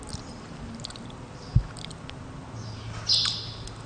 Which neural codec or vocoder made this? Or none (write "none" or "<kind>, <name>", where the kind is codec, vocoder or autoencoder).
none